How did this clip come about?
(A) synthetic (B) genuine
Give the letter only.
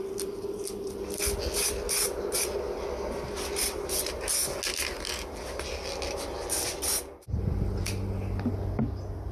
B